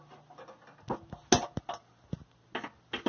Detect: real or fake real